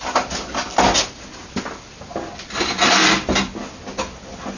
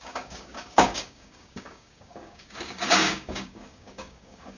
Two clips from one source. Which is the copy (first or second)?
second